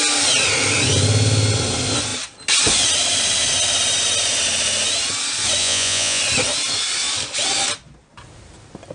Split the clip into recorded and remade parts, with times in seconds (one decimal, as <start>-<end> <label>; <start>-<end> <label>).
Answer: 0.0-5.6 recorded; 5.6-6.2 remade; 6.2-8.9 recorded